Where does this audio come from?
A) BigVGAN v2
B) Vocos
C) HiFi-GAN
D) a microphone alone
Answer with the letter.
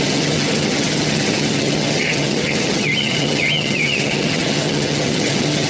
C